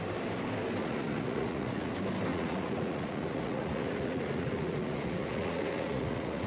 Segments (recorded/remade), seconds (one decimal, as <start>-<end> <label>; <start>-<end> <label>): 0.0-0.8 recorded; 0.8-1.9 remade; 1.9-2.3 recorded; 2.3-6.5 remade